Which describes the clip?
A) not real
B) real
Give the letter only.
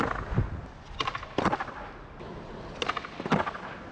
B